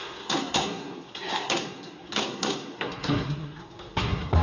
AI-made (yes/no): yes